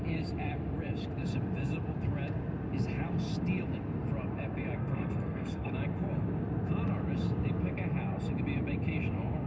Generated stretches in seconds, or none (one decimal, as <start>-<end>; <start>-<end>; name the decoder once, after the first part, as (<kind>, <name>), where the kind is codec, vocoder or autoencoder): 4.8-5.7 (codec, SNAC)